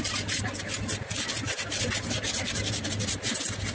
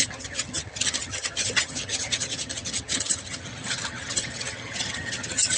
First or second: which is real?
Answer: first